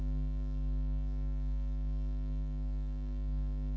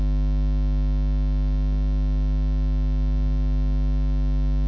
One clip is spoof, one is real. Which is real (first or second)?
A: second